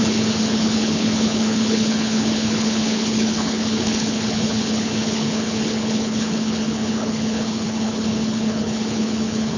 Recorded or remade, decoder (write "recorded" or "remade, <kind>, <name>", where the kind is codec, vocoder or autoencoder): remade, codec, HILCodec